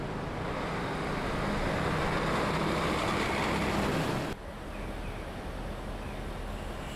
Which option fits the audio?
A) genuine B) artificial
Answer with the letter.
A